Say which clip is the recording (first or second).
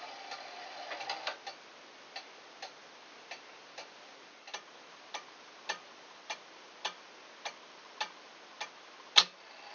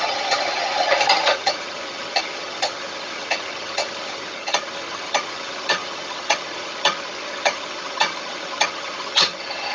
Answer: first